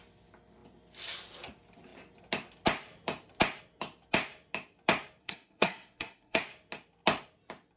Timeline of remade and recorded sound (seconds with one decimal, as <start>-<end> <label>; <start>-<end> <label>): 0.0-5.2 recorded; 5.2-6.4 remade; 6.4-7.8 recorded